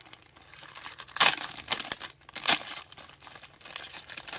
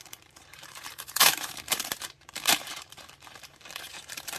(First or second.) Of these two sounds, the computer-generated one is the second